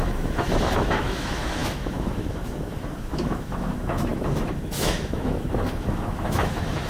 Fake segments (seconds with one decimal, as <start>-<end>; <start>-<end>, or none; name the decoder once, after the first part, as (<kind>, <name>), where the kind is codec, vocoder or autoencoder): 0.0-6.9 (autoencoder, DAC-VAE)